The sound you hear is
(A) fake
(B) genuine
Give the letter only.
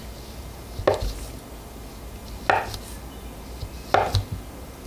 B